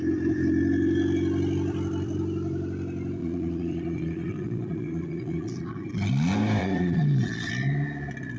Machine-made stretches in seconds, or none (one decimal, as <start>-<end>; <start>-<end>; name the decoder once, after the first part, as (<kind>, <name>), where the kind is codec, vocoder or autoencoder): 3.2-6.1 (vocoder, Vocos); 6.6-7.5